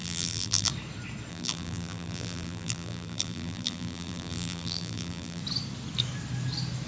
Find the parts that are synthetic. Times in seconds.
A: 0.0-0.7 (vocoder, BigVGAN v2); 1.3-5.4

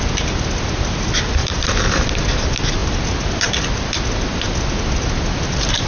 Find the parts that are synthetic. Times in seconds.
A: 1.4-2.0 (vocoder, BigVGAN v2)

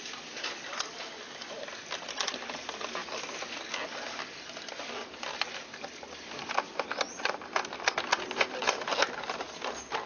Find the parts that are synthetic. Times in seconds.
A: none

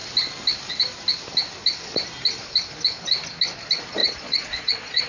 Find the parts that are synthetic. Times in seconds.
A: 4.0-5.1 (vocoder, Vocos)

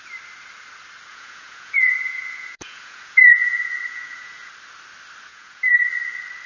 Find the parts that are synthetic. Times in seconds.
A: 1.1-4.5 (vocoder, Vocos); 5.3-5.9

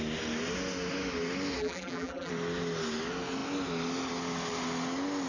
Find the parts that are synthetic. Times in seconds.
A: 1.6-2.3 (vocoder, BigVGAN v2)